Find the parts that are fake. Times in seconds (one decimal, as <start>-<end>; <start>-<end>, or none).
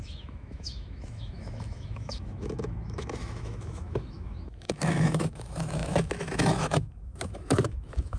0.0-8.2